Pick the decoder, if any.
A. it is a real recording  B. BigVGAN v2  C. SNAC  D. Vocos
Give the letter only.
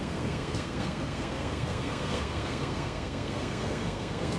C